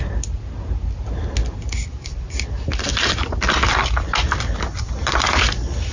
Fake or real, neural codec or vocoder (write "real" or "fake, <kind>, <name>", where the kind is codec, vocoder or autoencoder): real